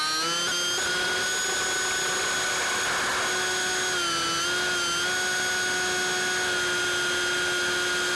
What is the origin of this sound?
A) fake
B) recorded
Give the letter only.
B